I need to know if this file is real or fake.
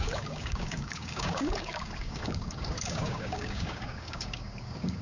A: fake